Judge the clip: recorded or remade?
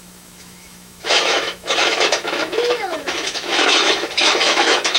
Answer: remade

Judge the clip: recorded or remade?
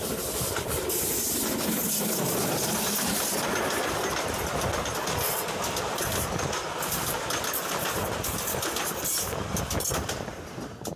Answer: recorded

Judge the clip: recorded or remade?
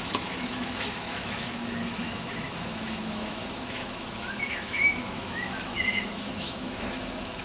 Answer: remade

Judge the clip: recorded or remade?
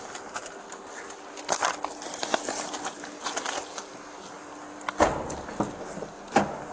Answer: recorded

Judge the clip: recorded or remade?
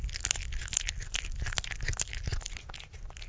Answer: recorded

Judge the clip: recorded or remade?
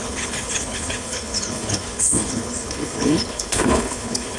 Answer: remade